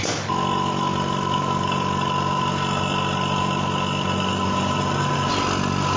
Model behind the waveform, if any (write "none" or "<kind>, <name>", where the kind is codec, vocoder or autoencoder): none